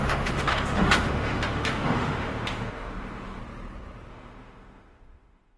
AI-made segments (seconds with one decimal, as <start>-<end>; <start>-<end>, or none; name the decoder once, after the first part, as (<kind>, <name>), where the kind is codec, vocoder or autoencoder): 0.0-3.4 (autoencoder, DAC-VAE); 4.1-5.6